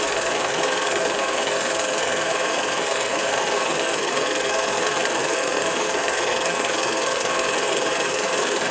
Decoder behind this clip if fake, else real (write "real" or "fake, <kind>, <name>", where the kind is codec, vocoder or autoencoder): fake, codec, SNAC